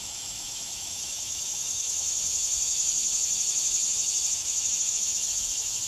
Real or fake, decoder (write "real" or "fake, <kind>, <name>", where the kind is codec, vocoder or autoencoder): fake, autoencoder, DAC-VAE